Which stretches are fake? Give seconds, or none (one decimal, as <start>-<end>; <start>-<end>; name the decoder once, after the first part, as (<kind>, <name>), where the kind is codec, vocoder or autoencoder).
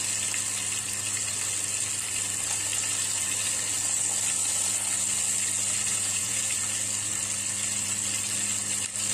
5.9-6.4 (vocoder, Vocos)